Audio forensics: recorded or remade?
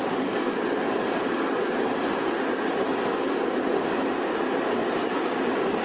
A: recorded